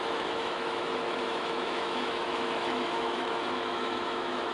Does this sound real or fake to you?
fake